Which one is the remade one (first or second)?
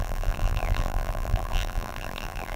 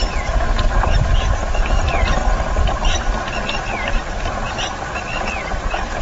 first